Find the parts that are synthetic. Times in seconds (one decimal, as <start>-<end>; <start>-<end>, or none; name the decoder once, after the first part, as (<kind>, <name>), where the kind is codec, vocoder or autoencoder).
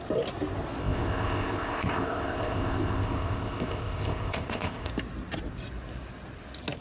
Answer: 0.8-4.9 (codec, ZipCodec)